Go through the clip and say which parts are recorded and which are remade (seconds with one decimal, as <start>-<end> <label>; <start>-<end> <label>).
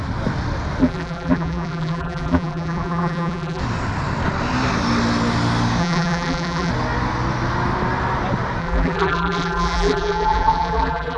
0.0-0.8 recorded; 0.8-3.6 remade; 3.6-5.8 recorded; 5.8-6.7 remade; 6.7-8.6 recorded; 8.6-11.2 remade